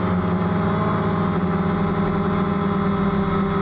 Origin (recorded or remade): recorded